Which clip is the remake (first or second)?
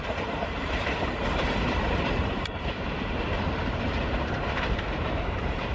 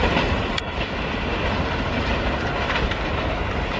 first